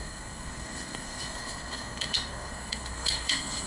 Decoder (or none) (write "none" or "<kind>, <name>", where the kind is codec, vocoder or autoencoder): codec, SNAC